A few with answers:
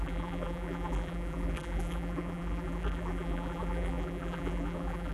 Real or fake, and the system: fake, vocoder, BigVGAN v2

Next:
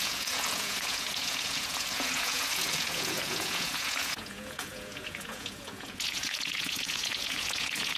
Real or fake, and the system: fake, vocoder, Vocos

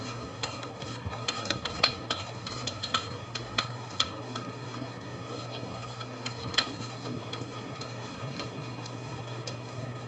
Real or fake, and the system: fake, codec, SNAC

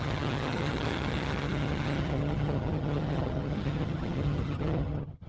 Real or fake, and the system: fake, vocoder, HiFi-GAN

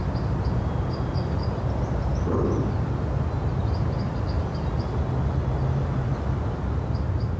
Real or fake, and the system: real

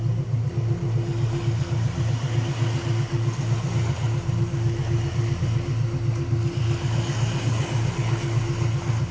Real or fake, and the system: real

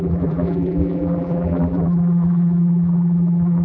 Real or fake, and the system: fake, vocoder, BigVGAN v2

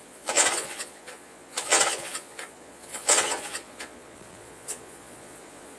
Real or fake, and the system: fake, vocoder, Vocos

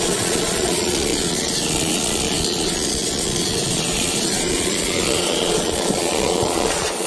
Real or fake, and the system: fake, vocoder, Vocos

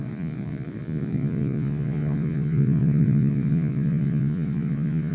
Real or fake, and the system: fake, vocoder, Vocos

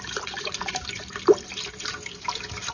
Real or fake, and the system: fake, vocoder, BigVGAN v2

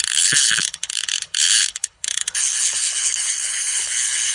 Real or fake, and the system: fake, codec, HILCodec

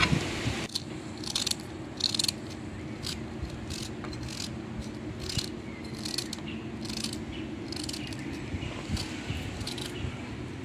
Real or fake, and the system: real